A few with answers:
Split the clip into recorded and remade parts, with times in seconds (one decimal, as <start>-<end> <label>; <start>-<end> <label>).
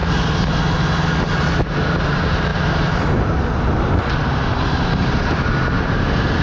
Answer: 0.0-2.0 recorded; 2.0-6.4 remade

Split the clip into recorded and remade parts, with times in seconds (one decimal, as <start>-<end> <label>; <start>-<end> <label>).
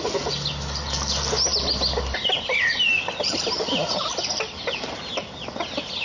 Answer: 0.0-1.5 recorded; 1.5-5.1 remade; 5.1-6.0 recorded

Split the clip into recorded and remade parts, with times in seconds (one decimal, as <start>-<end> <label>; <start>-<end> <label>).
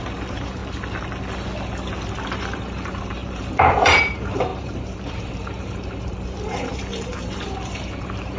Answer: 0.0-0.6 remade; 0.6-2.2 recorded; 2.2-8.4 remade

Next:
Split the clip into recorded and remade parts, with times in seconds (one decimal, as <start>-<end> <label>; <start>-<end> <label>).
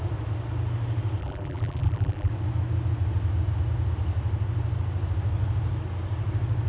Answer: 0.0-1.2 recorded; 1.2-2.3 remade; 2.3-6.7 recorded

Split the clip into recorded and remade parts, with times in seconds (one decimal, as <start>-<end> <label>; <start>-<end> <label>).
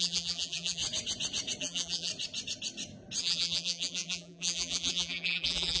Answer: 0.0-0.8 remade; 0.8-1.6 recorded; 1.6-2.1 remade; 2.1-3.2 recorded; 3.2-5.8 remade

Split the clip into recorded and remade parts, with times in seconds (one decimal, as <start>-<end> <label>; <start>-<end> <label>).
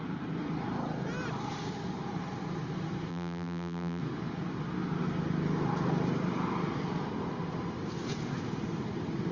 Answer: 0.0-3.1 recorded; 3.1-4.0 remade; 4.0-9.3 recorded